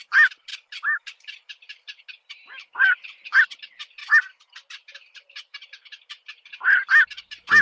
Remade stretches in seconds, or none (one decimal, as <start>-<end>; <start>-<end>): none